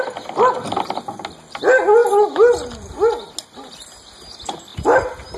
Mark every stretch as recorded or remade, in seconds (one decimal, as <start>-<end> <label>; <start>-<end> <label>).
0.0-5.4 recorded